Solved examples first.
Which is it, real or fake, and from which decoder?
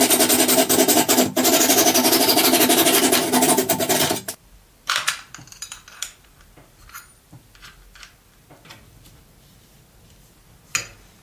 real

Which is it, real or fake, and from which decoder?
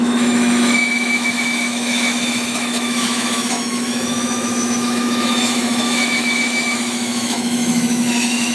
fake, autoencoder, DAC-VAE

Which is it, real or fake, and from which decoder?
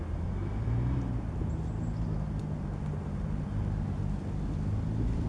real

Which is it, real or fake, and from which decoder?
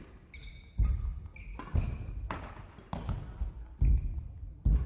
real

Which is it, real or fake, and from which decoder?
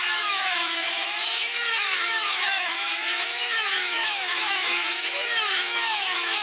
fake, autoencoder, DAC-VAE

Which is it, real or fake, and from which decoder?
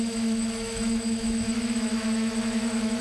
fake, autoencoder, DAC-VAE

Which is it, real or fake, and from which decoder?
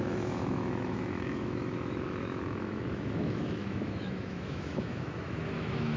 fake, autoencoder, DAC-VAE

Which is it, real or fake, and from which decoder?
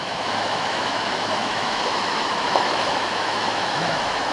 fake, autoencoder, DAC-VAE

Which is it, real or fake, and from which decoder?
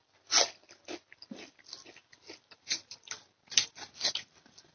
real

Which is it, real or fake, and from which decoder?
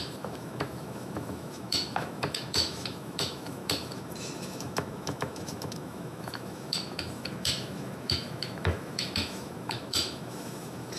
fake, autoencoder, DAC-VAE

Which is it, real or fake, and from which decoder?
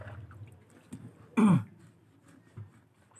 real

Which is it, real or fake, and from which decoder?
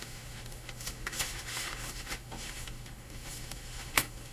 fake, autoencoder, DAC-VAE